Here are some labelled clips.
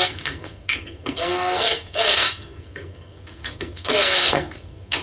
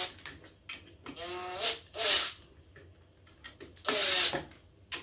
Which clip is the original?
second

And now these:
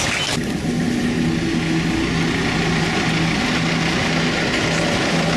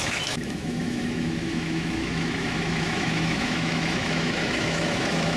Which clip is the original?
first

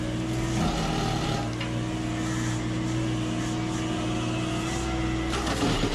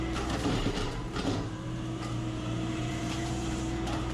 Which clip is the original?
first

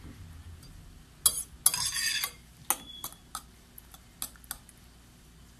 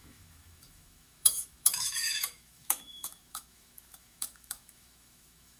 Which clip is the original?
first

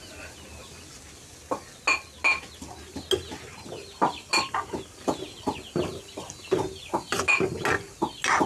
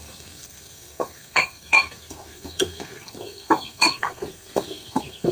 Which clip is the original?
first